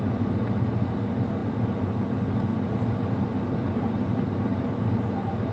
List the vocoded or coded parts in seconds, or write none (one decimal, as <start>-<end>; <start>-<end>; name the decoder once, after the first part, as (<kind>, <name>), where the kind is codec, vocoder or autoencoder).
none